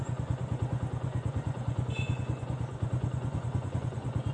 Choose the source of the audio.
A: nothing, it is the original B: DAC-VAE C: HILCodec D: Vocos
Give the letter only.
D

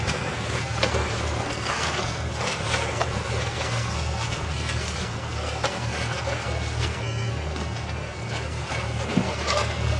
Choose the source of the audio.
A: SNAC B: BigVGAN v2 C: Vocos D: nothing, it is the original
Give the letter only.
A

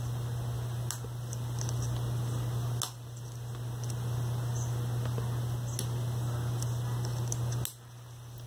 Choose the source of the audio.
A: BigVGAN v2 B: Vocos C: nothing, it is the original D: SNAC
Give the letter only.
C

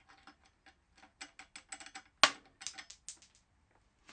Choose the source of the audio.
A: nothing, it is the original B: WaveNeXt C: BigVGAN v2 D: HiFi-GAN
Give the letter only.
A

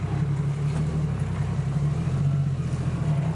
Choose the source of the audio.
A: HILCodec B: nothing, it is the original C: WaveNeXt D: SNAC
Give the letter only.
B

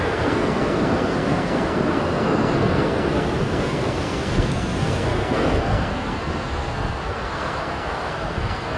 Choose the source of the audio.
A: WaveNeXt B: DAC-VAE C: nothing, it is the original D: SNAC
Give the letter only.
D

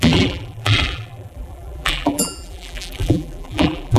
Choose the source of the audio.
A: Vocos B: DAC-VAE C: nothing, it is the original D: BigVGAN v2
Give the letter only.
D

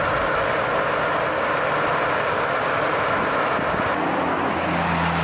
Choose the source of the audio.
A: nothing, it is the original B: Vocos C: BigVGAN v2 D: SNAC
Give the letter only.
A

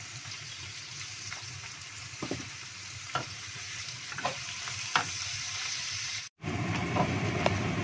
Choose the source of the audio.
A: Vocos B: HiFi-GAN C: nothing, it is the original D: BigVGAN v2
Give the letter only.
D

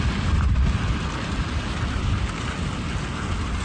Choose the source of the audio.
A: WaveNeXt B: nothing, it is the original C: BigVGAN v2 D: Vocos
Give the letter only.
B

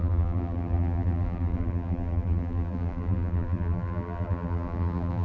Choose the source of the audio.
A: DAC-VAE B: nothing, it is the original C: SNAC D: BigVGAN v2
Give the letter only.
D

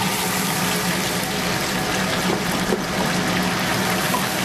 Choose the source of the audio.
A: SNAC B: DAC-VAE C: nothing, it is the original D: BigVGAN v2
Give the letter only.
C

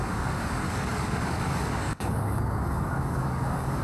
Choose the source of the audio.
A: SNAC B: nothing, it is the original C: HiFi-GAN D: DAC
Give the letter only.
D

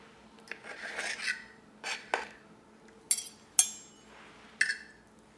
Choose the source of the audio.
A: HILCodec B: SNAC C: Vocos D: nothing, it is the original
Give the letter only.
D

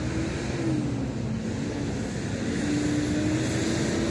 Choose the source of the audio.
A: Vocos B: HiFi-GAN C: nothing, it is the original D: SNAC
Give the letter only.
C